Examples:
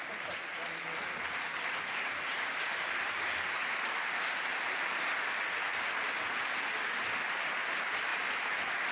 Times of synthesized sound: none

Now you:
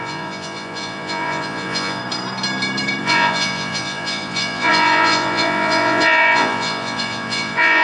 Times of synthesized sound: 0.0-2.0 (vocoder, Vocos); 3.0-7.8

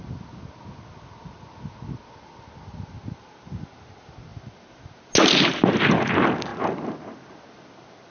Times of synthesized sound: none